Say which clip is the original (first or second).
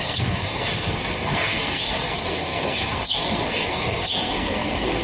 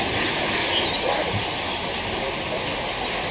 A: second